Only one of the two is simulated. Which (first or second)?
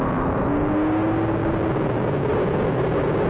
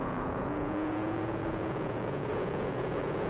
second